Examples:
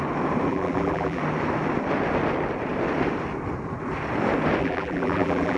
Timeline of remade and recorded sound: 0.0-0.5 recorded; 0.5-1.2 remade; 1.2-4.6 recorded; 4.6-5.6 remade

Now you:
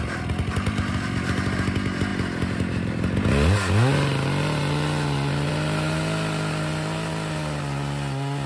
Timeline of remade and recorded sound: 0.0-8.5 recorded

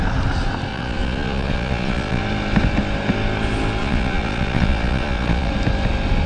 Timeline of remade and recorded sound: 0.0-0.7 recorded; 0.7-2.2 remade; 2.2-3.8 recorded; 3.8-5.5 remade; 5.5-6.3 recorded

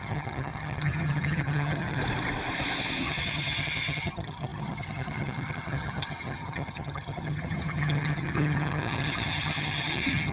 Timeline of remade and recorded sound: 0.0-2.0 remade; 2.0-3.0 recorded; 3.0-10.3 remade

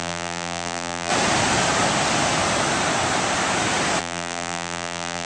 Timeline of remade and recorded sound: 0.0-1.1 remade; 1.1-4.0 recorded; 4.0-5.2 remade

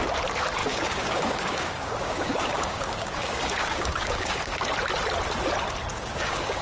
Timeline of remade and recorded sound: 0.0-0.6 recorded; 0.6-4.6 remade; 4.6-5.9 recorded; 5.9-6.6 remade

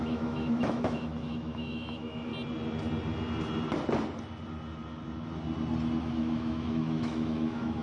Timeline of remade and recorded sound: 0.0-2.3 remade; 2.3-6.0 recorded; 6.0-7.8 remade

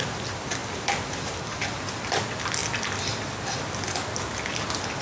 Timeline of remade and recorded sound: 0.0-5.0 recorded